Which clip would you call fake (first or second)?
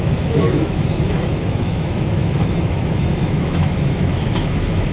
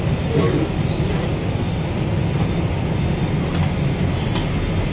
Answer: first